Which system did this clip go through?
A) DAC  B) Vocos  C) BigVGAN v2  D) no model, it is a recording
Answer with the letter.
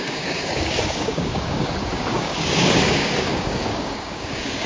A